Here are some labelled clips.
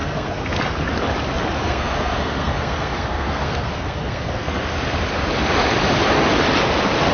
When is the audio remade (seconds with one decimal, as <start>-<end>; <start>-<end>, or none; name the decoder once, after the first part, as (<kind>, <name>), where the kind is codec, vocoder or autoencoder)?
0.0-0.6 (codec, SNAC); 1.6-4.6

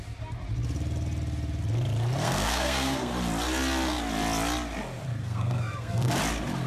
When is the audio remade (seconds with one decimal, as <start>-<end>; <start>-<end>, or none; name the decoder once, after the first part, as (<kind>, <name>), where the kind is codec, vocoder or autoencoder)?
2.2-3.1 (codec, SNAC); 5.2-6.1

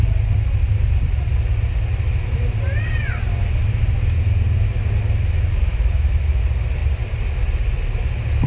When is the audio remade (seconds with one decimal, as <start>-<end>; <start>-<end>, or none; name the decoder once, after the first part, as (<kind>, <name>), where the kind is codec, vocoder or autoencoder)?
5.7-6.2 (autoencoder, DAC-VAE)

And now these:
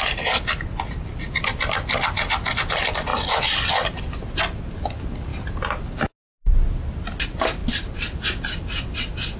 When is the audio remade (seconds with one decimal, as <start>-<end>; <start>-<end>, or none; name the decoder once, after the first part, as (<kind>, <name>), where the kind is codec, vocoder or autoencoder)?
3.1-4.4 (vocoder, BigVGAN v2); 7.6-8.4

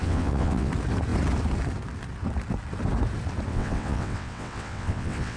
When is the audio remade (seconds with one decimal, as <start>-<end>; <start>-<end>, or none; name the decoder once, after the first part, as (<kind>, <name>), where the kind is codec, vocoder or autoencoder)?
0.0-0.7 (vocoder, WaveNeXt); 3.5-5.4

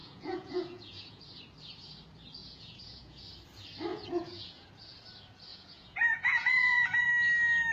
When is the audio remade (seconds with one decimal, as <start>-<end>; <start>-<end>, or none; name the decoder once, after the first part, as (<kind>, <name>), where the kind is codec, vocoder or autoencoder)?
0.0-1.2 (vocoder, Vocos); 2.4-3.2; 3.9-4.7; 5.5-7.1